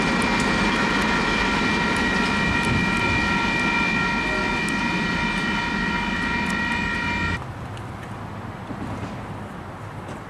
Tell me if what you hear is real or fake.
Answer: real